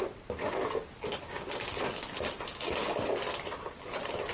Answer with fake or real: real